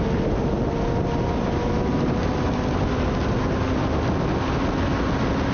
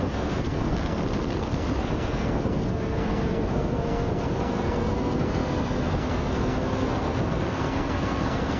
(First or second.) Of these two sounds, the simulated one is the second